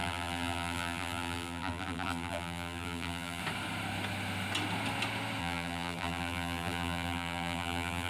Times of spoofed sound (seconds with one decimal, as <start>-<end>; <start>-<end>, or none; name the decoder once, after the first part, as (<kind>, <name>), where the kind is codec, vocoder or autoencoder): 0.0-3.4 (vocoder, BigVGAN v2); 5.4-8.1